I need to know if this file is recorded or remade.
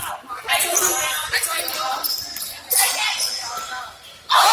recorded